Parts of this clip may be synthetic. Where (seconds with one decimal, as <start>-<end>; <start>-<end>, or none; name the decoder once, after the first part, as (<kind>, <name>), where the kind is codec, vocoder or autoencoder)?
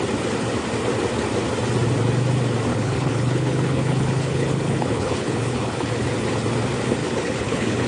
2.7-5.9 (codec, HILCodec); 7.0-7.9